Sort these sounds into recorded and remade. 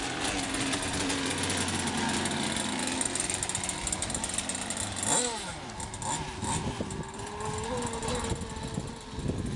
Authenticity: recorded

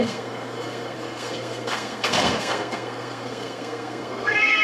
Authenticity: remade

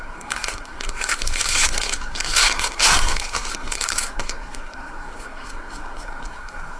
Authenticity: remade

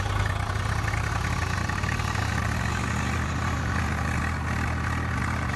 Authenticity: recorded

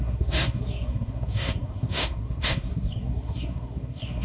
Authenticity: remade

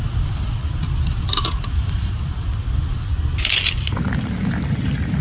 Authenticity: recorded